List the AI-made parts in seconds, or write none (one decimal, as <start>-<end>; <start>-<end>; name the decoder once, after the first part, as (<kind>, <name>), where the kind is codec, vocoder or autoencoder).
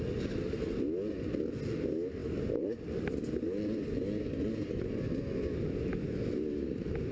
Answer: none